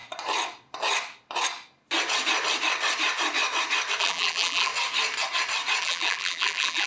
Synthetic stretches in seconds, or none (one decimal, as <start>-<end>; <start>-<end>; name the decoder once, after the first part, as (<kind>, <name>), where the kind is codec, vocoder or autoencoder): 4.0-4.7 (vocoder, BigVGAN v2); 5.8-6.9